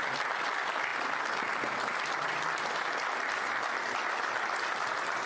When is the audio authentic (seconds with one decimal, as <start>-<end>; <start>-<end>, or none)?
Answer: 0.0-5.3